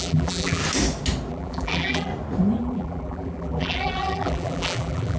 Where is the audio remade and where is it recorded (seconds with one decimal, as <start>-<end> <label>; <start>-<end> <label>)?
0.0-0.6 remade; 0.6-1.3 recorded; 1.3-2.1 remade; 2.1-2.6 recorded; 2.6-5.2 remade